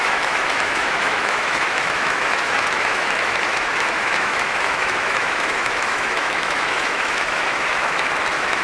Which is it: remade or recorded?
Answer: remade